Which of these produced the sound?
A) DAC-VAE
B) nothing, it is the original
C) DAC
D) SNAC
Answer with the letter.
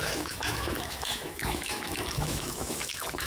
A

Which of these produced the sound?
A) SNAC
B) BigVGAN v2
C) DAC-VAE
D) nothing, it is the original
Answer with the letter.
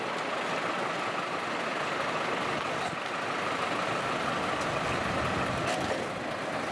D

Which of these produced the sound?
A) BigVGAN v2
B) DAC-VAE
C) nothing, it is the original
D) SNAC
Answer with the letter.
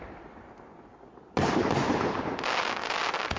C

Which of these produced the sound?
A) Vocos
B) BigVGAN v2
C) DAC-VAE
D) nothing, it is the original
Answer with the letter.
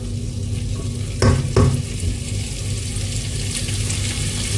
D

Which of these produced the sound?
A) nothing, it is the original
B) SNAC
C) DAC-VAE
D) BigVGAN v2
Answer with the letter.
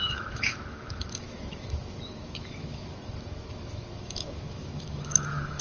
C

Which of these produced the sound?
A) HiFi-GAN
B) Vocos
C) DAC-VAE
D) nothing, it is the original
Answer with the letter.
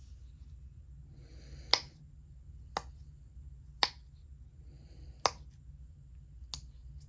D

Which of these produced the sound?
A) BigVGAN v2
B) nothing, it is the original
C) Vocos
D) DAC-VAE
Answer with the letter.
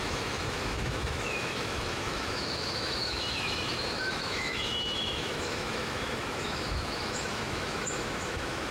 D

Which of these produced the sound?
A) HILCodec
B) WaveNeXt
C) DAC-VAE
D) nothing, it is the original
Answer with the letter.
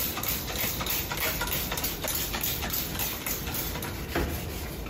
D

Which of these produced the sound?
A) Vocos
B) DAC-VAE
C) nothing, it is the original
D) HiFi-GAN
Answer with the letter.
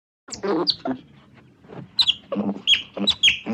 C